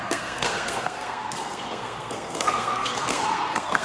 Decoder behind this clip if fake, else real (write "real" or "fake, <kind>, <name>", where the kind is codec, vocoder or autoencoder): fake, codec, SNAC